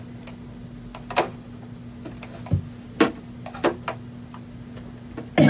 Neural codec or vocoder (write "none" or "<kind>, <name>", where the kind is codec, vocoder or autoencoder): none